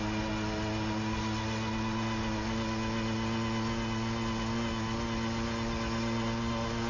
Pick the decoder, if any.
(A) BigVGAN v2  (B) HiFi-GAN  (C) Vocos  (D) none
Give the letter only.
D